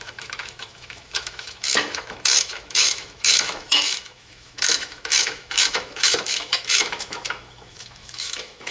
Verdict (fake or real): fake